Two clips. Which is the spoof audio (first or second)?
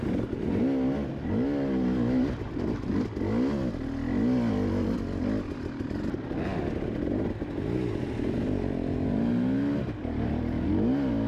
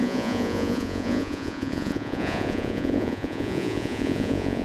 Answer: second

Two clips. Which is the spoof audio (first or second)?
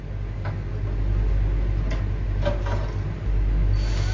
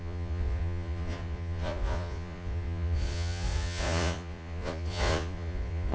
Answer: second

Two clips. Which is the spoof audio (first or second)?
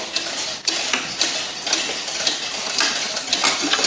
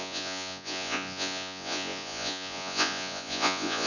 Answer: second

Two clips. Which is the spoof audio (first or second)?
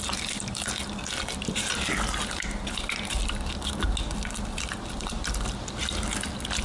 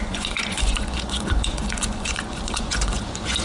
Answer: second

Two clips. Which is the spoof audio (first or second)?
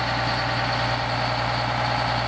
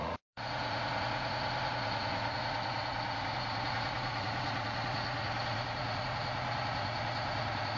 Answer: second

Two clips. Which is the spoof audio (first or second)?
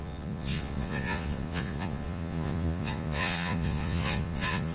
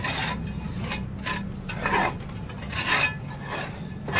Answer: first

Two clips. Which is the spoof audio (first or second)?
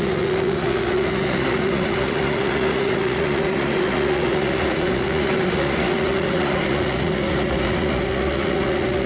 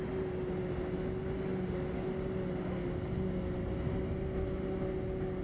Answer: first